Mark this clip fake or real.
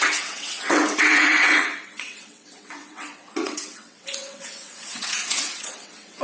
fake